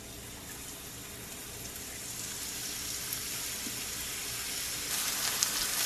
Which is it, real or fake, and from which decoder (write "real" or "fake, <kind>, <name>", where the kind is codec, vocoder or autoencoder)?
real